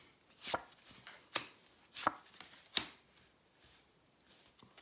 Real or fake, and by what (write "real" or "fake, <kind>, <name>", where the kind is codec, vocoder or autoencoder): real